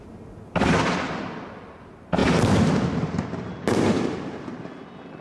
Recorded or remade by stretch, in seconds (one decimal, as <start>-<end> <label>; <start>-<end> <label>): 0.0-5.2 recorded